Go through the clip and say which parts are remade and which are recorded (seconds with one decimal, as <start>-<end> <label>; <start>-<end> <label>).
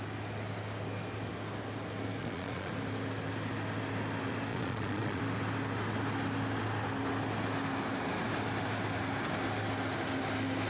0.0-2.2 recorded; 2.2-2.7 remade; 2.7-4.5 recorded; 4.5-5.2 remade; 5.2-10.7 recorded